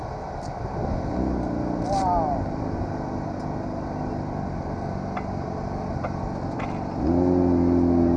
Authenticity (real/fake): real